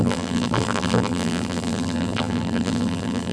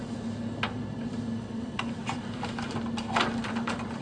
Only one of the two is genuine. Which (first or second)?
second